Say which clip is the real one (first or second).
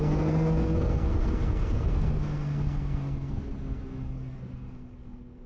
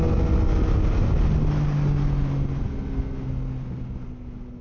second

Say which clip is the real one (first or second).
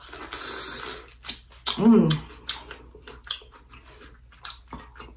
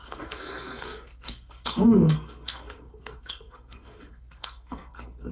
first